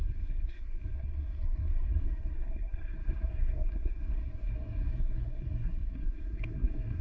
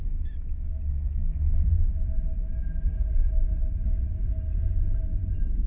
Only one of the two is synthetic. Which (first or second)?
first